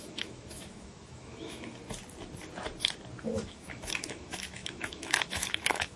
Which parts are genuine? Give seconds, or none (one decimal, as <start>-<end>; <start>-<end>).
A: 1.8-3.2